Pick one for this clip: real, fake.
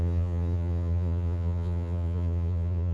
fake